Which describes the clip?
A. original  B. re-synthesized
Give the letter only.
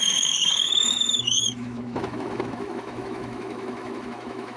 B